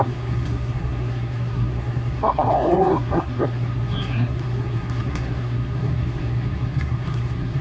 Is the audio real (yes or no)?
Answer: no